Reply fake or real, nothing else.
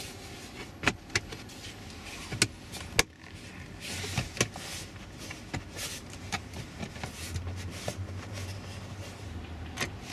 real